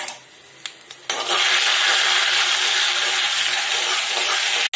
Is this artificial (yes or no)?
no